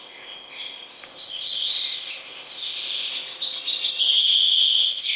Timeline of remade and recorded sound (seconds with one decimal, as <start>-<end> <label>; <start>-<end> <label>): 0.0-3.1 remade; 3.1-4.2 recorded; 4.2-5.2 remade